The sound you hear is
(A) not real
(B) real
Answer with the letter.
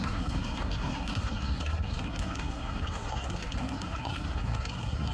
A